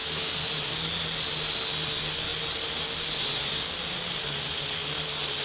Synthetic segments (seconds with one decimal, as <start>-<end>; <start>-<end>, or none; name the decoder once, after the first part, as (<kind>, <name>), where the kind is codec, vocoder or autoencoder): 0.0-0.5 (codec, SNAC)

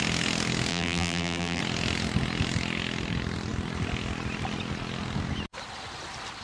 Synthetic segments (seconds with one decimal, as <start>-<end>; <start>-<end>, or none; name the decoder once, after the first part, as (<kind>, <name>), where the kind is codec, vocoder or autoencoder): 0.7-1.6 (vocoder, BigVGAN v2)

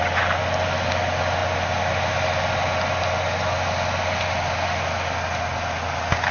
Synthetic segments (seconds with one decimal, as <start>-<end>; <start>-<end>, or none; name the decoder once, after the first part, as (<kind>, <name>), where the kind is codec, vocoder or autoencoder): none

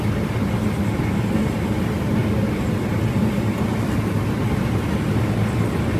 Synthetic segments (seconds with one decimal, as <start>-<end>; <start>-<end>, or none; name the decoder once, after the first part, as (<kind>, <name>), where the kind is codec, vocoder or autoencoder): none

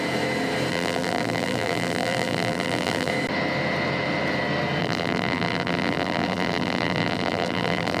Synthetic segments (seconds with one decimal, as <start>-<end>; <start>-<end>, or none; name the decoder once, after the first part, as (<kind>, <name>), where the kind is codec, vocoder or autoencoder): 0.7-3.1 (vocoder, BigVGAN v2); 4.8-8.0